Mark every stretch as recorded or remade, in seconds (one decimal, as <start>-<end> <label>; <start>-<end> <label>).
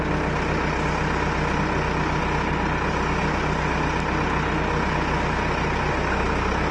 0.0-6.7 recorded